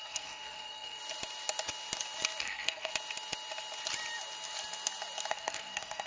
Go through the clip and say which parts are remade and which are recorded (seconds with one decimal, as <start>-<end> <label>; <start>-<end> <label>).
0.0-1.0 remade; 1.0-2.4 recorded; 2.4-2.9 remade; 2.9-5.3 recorded; 5.3-6.1 remade